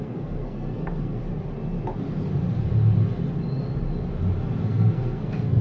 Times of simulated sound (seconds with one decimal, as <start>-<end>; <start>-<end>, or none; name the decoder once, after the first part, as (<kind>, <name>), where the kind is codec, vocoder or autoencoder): 0.0-1.2 (codec, SNAC); 4.6-5.6